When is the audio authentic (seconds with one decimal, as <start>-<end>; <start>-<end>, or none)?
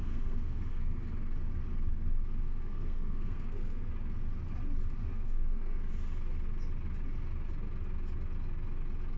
1.0-2.4; 3.9-5.0; 5.9-9.2